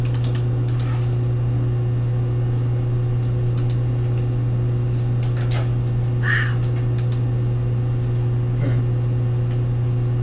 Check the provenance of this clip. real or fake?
real